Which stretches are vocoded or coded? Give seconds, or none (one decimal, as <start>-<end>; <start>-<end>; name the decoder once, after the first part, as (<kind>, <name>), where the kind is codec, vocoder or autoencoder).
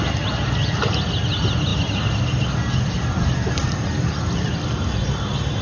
none